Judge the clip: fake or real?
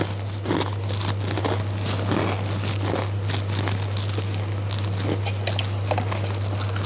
real